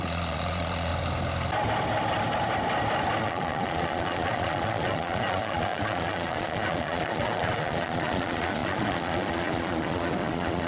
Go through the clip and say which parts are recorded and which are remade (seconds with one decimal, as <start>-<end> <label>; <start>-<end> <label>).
0.0-0.9 remade; 0.9-3.2 recorded; 3.2-10.7 remade